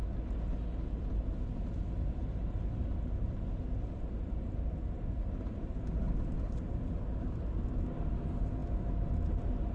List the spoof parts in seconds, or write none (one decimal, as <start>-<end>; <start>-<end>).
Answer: none